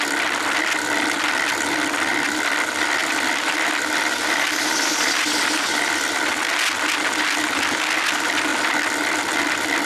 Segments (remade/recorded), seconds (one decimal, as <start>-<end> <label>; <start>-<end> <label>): 0.0-9.9 recorded